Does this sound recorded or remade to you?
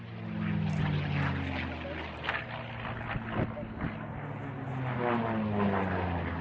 recorded